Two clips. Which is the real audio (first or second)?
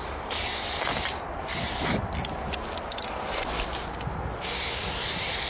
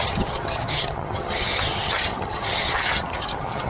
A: first